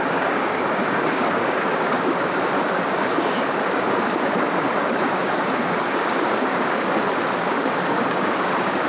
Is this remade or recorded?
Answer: remade